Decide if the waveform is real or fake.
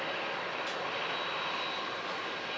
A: real